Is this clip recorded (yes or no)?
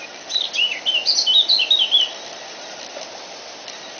yes